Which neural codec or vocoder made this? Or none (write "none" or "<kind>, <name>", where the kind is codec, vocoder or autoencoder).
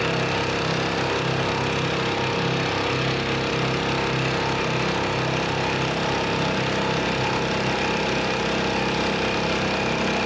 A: none